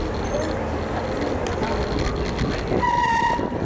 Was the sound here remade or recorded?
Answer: recorded